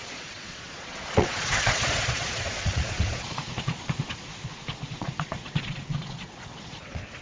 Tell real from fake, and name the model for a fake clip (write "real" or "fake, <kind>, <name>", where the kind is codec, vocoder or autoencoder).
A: fake, vocoder, Vocos